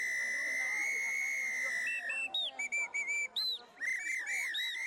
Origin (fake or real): real